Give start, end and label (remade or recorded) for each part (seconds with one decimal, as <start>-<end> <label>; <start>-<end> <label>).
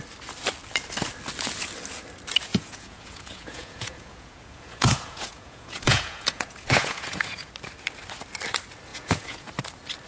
0.0-2.5 recorded; 2.5-7.5 remade; 7.5-8.9 recorded; 8.9-9.5 remade; 9.5-10.1 recorded